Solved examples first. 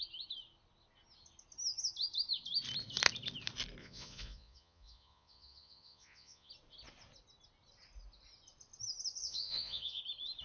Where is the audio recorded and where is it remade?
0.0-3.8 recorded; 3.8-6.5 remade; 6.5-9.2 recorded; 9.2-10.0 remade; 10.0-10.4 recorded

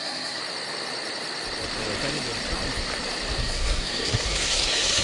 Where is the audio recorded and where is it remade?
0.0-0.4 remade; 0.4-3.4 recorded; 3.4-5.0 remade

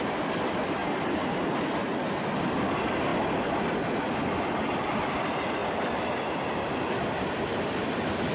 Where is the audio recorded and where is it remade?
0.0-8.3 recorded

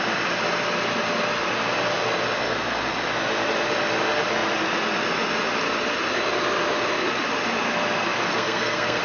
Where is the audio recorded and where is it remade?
0.0-8.3 recorded; 8.3-9.0 remade

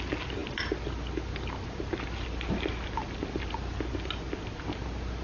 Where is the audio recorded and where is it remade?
0.0-5.2 recorded

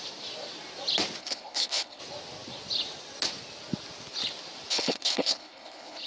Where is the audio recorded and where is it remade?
0.0-1.2 recorded; 1.2-2.0 remade; 2.0-4.7 recorded; 4.7-6.1 remade

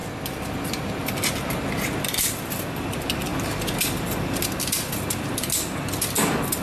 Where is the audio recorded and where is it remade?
0.0-6.6 recorded